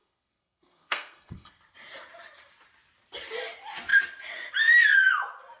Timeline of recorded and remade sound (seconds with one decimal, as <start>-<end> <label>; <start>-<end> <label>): 0.0-1.6 remade; 1.6-5.6 recorded